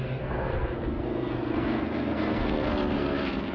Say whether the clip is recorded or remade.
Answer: remade